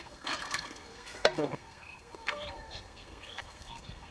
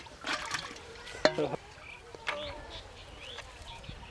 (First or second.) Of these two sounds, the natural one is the second